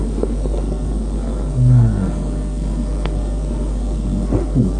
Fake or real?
fake